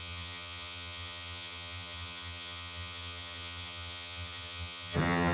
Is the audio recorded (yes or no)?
no